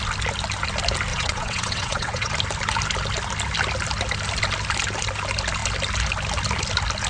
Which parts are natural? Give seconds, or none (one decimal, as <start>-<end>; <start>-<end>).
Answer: 0.0-1.1; 2.3-7.1